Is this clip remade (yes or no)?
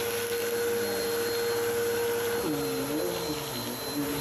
no